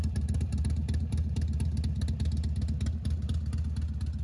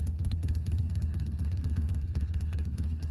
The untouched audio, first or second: first